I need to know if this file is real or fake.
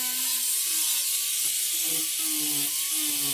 real